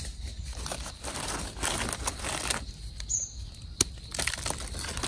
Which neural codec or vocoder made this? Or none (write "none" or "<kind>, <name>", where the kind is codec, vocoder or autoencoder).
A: none